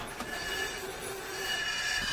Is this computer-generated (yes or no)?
no